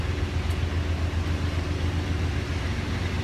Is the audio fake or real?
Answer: real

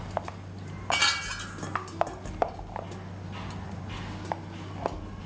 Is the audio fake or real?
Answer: real